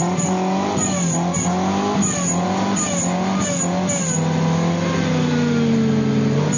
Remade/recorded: recorded